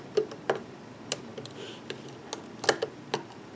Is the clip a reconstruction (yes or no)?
no